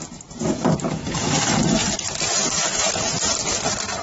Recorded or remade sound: remade